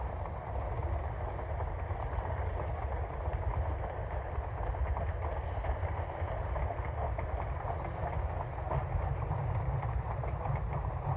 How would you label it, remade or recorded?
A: recorded